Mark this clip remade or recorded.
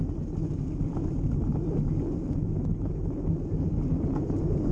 recorded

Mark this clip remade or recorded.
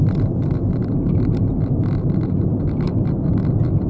recorded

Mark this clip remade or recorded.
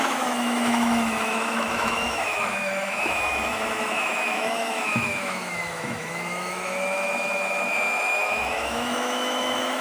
remade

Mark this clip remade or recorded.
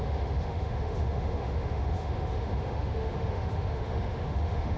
remade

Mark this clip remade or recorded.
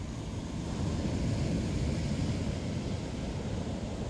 recorded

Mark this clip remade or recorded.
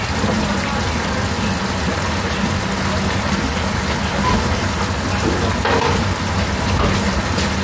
recorded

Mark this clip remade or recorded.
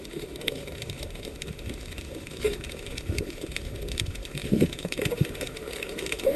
remade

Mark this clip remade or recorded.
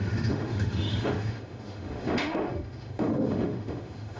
remade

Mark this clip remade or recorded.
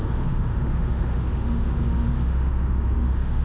remade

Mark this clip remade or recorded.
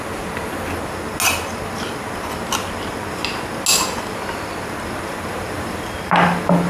recorded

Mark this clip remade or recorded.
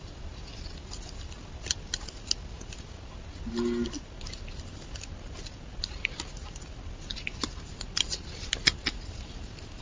recorded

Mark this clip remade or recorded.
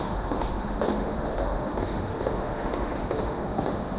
remade